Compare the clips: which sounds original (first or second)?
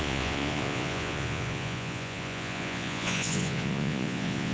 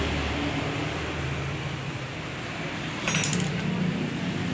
second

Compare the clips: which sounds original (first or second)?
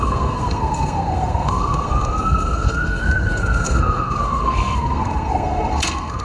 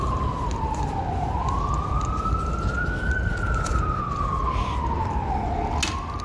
second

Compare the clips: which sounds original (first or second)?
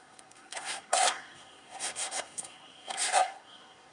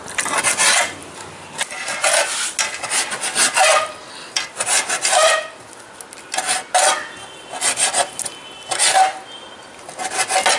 second